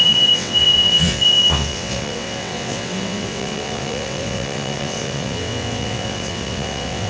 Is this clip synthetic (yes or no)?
yes